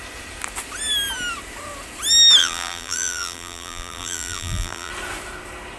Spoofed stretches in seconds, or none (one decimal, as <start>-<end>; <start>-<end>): 2.4-4.9